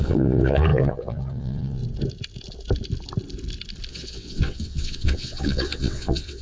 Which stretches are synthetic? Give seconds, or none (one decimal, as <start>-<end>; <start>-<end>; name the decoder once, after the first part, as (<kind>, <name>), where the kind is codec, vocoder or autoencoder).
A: 0.0-1.8 (vocoder, WaveNeXt); 3.9-6.4